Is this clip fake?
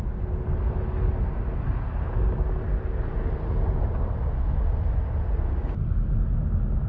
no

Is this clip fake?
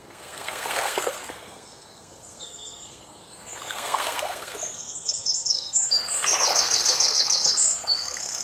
yes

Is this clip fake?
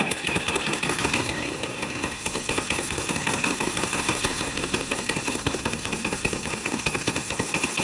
yes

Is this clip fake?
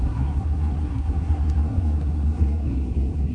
yes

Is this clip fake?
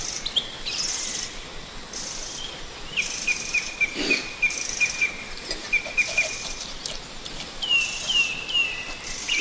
no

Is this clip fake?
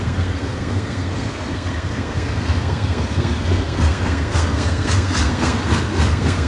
yes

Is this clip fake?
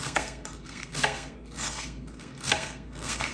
yes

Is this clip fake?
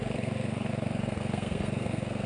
yes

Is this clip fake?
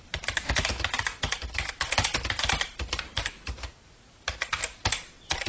no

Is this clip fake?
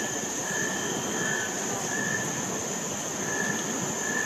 no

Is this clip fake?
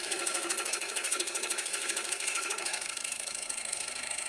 yes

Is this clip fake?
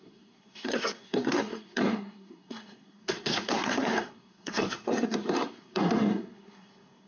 yes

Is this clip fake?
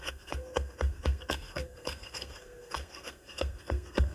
yes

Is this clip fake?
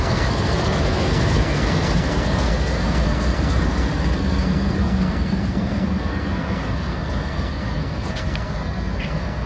yes